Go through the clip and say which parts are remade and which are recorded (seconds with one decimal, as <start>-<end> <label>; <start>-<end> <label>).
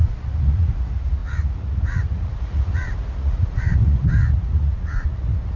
0.0-5.6 remade